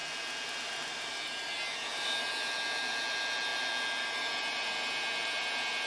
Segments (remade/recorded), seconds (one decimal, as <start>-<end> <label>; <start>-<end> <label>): 0.0-5.9 recorded